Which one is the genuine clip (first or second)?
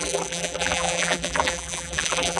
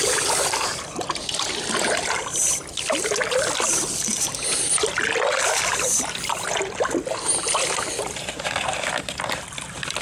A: second